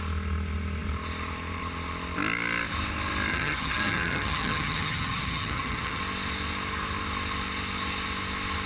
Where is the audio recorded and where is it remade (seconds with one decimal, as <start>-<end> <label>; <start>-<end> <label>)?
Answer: 0.0-3.3 recorded; 3.3-6.0 remade; 6.0-8.7 recorded